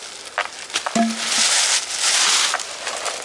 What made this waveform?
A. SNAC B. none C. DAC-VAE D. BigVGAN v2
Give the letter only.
B